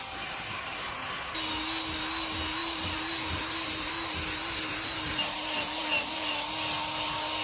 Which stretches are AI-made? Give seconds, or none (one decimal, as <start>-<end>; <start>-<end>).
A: 2.6-6.3